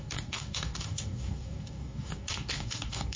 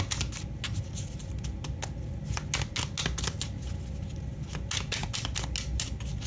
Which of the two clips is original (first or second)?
second